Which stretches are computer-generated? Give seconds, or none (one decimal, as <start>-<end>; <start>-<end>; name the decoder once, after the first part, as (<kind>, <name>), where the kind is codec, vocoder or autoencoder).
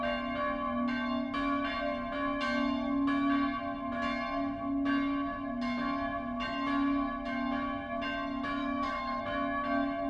8.6-9.2 (autoencoder, DAC-VAE)